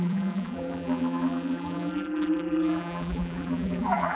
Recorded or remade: remade